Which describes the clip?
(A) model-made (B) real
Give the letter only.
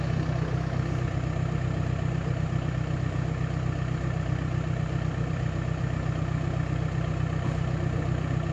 B